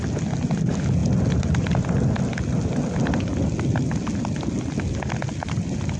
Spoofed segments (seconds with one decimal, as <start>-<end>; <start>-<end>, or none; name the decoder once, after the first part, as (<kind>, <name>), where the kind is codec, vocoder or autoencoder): none